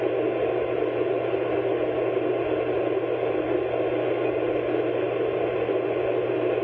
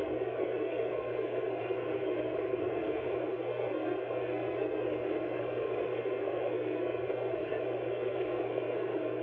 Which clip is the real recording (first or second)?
first